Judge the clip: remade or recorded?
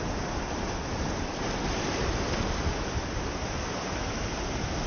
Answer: recorded